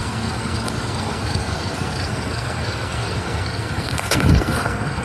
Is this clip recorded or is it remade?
remade